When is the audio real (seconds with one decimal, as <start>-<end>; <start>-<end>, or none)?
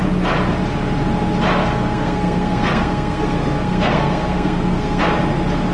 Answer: 0.0-1.6; 5.0-5.7